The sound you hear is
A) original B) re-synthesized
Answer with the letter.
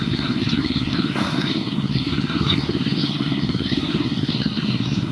B